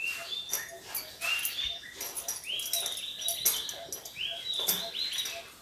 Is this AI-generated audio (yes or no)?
no